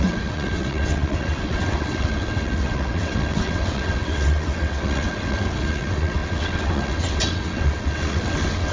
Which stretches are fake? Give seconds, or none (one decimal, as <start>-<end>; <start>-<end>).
0.0-8.7